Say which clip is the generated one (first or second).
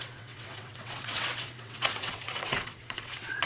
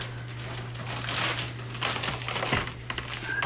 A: first